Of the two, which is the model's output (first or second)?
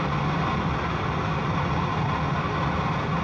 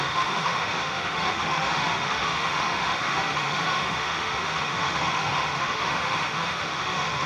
second